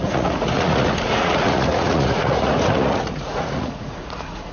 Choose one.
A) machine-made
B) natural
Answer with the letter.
A